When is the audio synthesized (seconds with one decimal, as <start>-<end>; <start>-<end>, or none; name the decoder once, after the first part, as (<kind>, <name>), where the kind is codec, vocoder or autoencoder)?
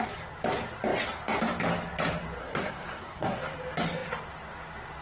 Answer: 2.4-3.4 (codec, SNAC)